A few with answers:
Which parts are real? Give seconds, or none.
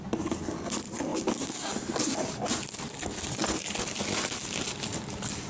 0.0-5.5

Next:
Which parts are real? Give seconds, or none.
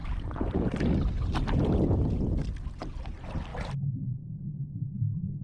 0.0-5.4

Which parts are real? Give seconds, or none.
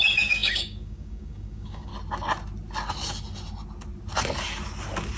1.9-5.2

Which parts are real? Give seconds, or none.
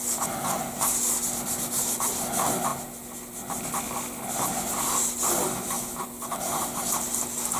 0.0-7.6